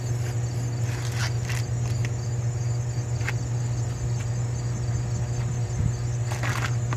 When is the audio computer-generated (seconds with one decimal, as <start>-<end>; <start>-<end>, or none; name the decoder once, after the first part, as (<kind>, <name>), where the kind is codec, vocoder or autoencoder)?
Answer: none

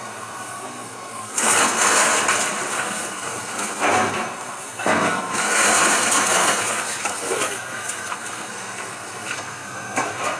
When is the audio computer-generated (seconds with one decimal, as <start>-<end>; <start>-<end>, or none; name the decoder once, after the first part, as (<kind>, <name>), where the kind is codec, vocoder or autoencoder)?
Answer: 0.0-2.2 (codec, SNAC); 2.7-10.4

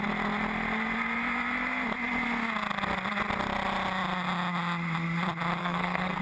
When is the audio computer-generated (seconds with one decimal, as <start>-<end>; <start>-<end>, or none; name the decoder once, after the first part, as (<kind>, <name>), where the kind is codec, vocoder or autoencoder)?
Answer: 5.6-6.2 (codec, SNAC)

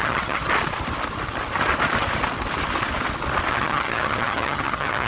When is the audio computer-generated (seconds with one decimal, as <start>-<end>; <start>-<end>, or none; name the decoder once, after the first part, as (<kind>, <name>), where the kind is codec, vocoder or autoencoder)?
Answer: 0.0-0.4 (vocoder, HiFi-GAN); 3.5-5.1

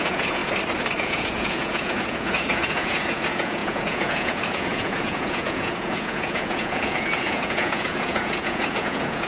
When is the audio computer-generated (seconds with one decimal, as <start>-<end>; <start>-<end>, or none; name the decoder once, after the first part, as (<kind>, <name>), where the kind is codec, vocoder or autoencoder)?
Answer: 0.0-0.4 (vocoder, Vocos); 1.0-9.3